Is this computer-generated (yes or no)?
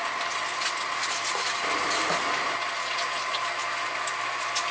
no